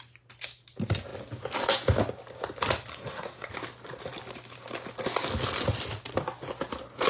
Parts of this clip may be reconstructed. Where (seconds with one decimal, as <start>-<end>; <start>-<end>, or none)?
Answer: 2.9-3.5